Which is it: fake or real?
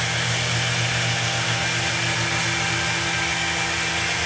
real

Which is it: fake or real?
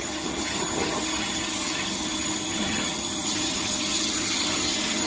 fake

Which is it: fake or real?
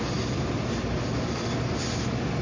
real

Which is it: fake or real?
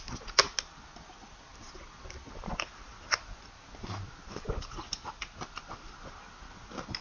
real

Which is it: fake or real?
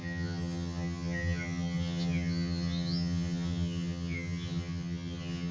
fake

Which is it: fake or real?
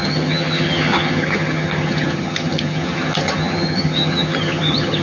fake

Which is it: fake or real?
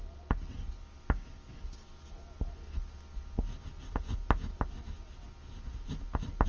real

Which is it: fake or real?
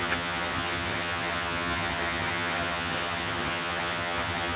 fake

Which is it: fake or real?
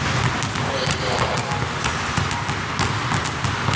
real